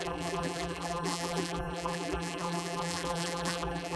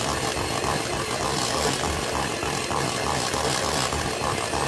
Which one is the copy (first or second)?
first